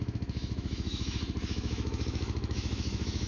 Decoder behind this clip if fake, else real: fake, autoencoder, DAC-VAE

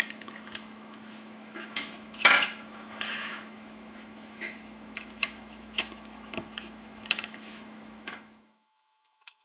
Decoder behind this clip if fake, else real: fake, autoencoder, DAC-VAE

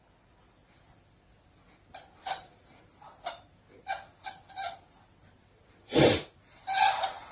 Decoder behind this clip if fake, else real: real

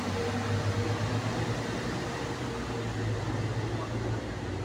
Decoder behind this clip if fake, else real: real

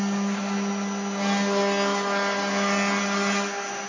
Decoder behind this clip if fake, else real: real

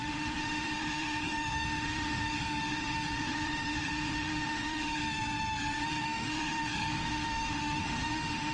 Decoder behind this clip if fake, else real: fake, autoencoder, DAC-VAE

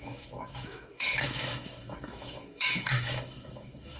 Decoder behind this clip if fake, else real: fake, autoencoder, DAC-VAE